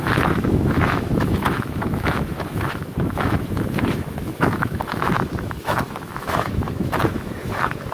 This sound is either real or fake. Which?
fake